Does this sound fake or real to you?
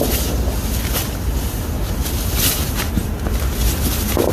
real